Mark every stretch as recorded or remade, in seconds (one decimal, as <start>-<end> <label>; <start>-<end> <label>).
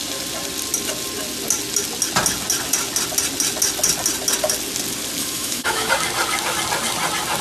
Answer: 0.0-5.2 recorded; 5.2-5.9 remade; 5.9-7.4 recorded